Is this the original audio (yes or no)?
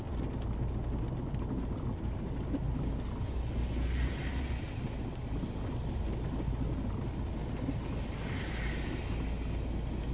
yes